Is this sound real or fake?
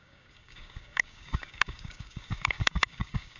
fake